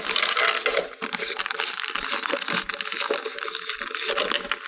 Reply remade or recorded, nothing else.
recorded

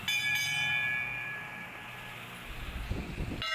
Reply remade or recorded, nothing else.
recorded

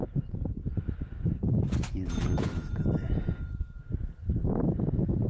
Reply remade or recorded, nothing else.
remade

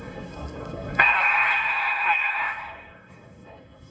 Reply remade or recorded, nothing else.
remade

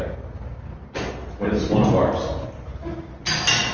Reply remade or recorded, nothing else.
recorded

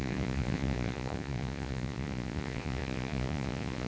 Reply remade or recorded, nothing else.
remade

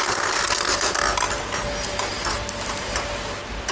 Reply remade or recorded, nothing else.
recorded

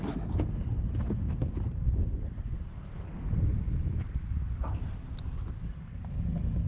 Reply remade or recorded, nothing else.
recorded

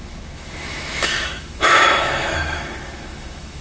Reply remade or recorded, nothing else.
remade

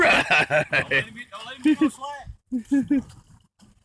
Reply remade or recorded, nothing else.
recorded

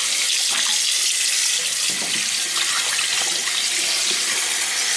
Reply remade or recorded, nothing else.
recorded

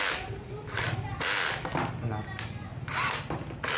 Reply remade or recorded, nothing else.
recorded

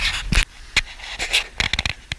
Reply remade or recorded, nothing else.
recorded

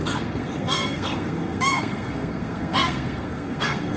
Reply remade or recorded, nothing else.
remade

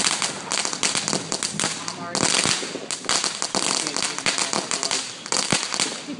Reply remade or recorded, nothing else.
recorded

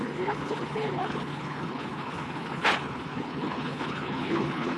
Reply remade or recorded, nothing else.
remade